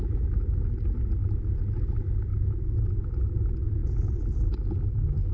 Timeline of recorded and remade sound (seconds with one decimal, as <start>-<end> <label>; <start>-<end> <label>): 0.0-5.3 recorded